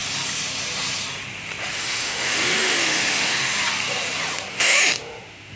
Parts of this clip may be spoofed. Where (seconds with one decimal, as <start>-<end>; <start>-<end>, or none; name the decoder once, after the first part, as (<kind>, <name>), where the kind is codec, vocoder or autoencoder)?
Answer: 1.7-3.5 (autoencoder, DAC-VAE); 4.5-5.6